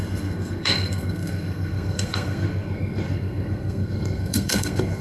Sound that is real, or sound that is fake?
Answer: fake